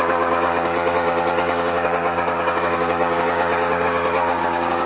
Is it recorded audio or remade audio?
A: remade